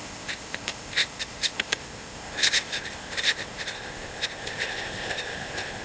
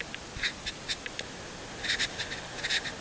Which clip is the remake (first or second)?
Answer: first